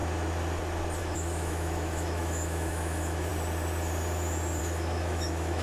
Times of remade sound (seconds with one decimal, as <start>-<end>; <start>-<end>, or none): 1.0-3.3; 4.6-5.6